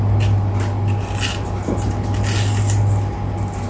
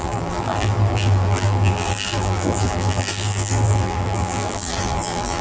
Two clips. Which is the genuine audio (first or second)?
first